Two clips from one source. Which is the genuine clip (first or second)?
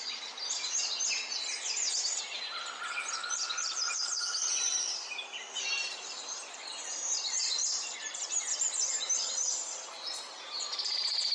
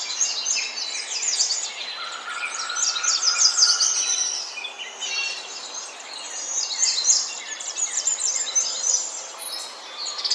second